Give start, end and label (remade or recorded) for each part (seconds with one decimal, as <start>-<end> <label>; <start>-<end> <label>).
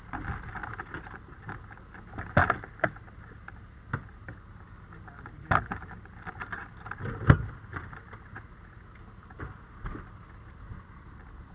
0.0-8.3 recorded; 8.3-8.9 remade; 8.9-11.5 recorded